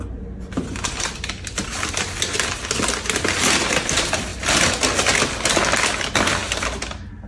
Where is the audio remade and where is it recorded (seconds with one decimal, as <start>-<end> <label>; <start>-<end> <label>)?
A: 0.0-7.3 recorded